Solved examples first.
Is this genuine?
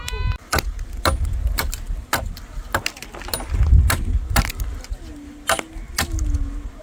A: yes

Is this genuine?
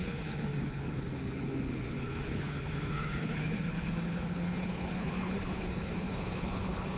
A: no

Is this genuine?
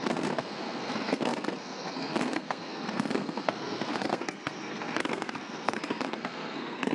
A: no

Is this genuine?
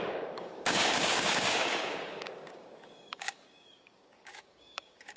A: no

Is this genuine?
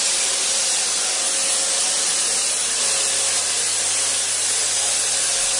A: yes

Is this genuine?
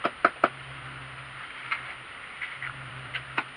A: yes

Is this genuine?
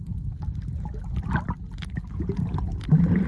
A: yes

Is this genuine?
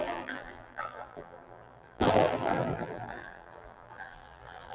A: no